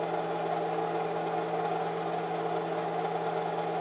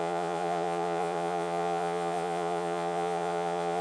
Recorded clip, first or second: first